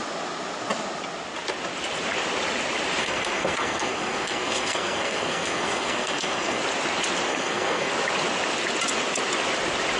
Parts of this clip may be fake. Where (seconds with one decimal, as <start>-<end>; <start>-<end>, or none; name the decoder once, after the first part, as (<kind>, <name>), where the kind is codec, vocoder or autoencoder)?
3.0-6.6 (codec, SNAC); 7.3-7.9